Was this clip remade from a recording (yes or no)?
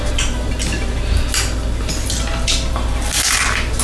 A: no